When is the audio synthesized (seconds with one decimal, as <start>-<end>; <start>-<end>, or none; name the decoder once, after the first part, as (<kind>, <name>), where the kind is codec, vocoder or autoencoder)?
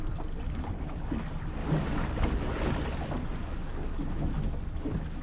1.6-2.4 (codec, DAC); 3.5-4.0